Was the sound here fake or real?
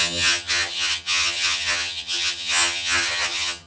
fake